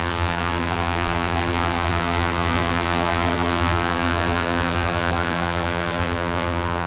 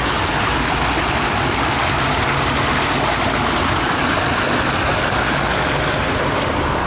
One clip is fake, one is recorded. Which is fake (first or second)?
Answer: first